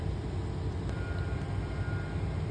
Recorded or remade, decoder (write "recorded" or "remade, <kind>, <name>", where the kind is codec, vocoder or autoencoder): recorded